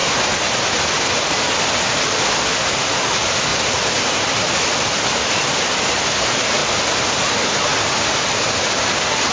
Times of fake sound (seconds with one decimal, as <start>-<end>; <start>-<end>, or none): none